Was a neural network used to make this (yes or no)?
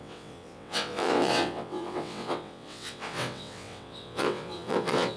yes